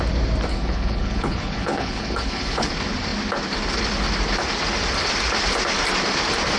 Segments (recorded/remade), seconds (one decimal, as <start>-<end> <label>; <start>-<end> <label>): 0.0-0.5 recorded; 0.5-2.7 remade; 2.7-6.6 recorded